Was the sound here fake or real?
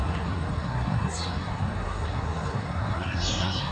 fake